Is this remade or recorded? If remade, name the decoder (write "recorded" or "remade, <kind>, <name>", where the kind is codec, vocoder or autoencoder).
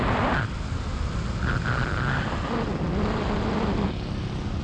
recorded